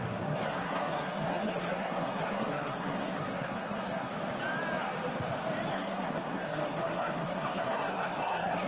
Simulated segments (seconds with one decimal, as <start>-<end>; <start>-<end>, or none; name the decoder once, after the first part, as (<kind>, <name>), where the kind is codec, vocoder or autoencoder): 0.0-4.1 (codec, SNAC); 5.7-8.7